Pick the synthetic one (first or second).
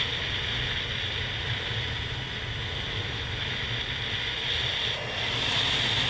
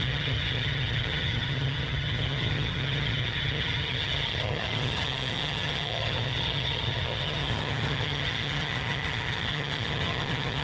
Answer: second